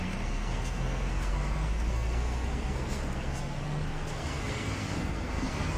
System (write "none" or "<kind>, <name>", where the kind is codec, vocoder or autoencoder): codec, SNAC